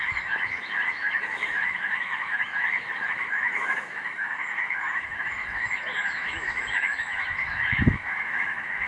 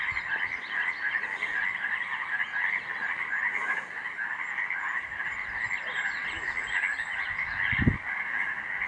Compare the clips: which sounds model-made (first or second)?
first